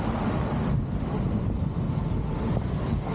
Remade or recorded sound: recorded